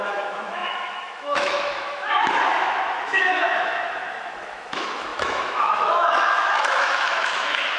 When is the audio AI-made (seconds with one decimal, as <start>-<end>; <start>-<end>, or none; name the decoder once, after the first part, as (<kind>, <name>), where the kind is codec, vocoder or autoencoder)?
0.0-7.8 (autoencoder, DAC-VAE)